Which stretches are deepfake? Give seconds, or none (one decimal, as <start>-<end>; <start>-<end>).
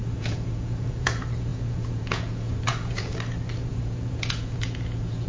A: 0.0-3.1; 3.7-5.3